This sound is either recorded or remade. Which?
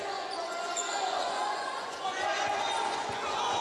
remade